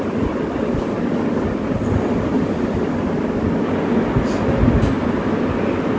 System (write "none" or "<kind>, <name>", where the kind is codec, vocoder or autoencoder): none